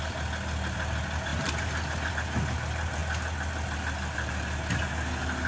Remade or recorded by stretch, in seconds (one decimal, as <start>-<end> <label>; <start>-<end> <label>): 0.0-5.5 recorded